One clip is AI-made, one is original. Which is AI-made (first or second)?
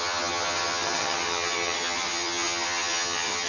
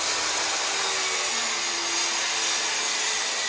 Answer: first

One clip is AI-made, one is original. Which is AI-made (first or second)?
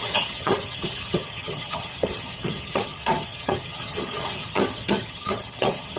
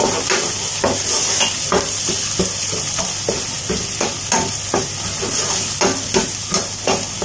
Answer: first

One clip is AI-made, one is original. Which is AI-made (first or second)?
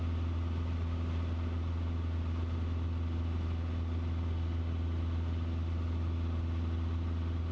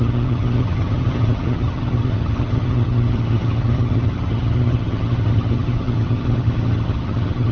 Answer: second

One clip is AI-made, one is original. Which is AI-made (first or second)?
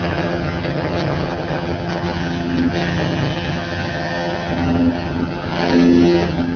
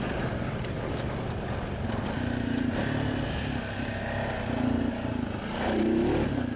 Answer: first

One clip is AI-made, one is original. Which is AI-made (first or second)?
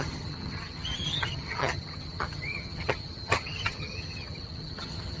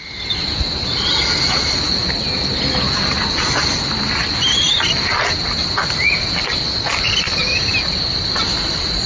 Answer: first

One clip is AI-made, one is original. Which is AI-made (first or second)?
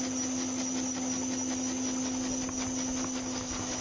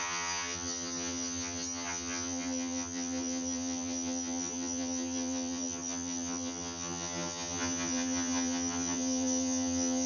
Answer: second